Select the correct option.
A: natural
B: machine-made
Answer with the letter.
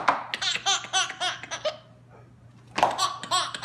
A